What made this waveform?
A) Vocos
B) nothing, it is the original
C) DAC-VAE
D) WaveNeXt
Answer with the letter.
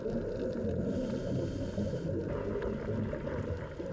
B